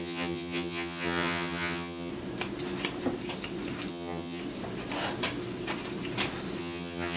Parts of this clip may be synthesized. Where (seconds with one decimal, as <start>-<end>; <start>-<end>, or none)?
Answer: 0.0-2.1; 3.9-4.4; 6.6-7.2